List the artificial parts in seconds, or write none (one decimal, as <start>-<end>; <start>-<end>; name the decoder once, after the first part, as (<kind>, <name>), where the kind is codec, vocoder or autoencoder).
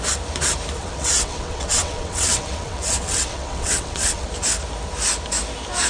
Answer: 0.8-4.3 (vocoder, WaveNeXt)